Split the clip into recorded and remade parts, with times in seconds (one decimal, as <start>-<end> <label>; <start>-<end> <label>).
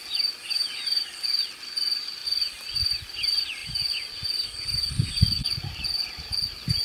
0.0-6.8 recorded